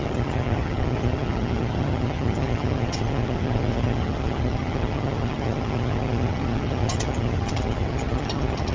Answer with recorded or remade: remade